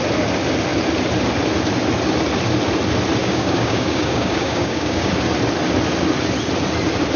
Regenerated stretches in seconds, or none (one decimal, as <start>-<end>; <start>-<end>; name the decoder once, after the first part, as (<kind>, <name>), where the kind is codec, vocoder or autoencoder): 3.2-5.1 (codec, DAC)